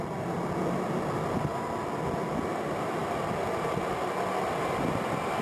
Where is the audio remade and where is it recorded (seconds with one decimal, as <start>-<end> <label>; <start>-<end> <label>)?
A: 0.0-5.4 recorded